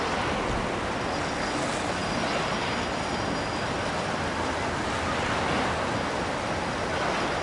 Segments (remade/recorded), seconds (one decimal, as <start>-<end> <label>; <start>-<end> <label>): 0.0-7.4 recorded